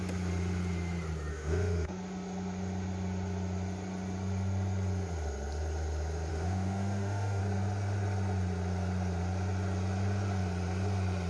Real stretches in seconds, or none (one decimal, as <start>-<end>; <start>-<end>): 0.0-1.3; 2.0-6.3; 7.4-11.3